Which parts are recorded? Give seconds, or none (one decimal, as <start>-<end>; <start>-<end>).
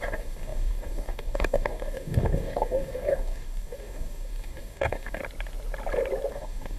5.2-6.3